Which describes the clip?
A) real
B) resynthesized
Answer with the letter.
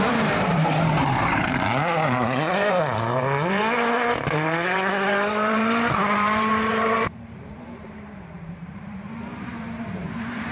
B